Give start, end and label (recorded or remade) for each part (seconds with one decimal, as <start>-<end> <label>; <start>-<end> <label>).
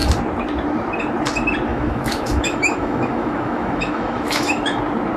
0.0-1.7 recorded; 1.7-4.8 remade; 4.8-5.2 recorded